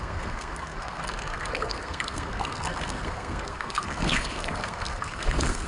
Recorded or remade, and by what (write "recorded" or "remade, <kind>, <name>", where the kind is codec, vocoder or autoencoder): remade, codec, SNAC